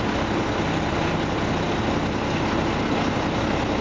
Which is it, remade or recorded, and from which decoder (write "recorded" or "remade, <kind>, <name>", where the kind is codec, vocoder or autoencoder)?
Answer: recorded